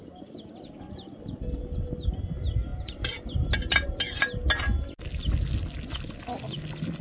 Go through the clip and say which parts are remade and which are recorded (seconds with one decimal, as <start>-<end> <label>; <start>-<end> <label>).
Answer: 0.0-7.0 recorded